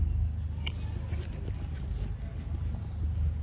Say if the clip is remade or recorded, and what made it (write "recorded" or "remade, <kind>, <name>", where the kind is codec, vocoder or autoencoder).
recorded